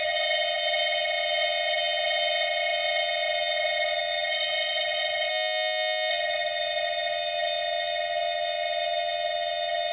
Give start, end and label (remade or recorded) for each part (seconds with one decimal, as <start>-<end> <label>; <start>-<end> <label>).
0.0-5.3 remade; 5.3-6.1 recorded; 6.1-9.9 remade